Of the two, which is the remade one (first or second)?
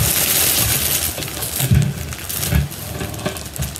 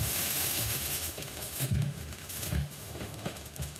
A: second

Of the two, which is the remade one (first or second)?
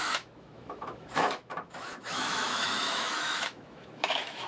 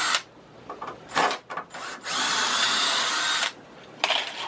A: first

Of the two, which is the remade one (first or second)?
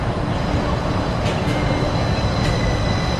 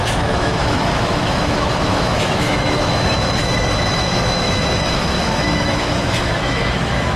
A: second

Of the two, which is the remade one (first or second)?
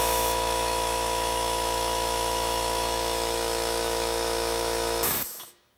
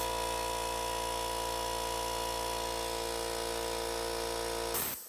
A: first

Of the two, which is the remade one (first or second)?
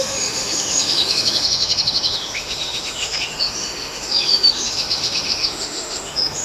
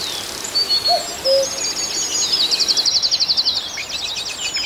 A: first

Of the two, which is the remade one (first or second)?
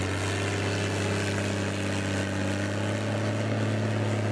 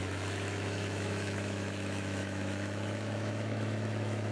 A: second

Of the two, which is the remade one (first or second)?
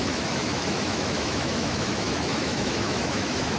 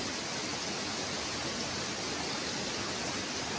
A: first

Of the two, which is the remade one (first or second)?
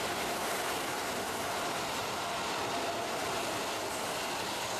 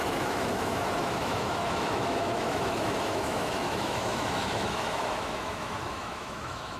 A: second